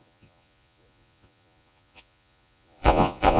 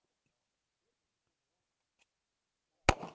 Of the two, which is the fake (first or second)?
first